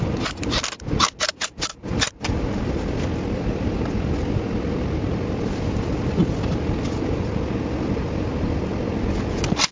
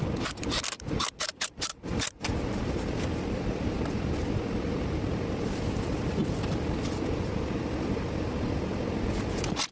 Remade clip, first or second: second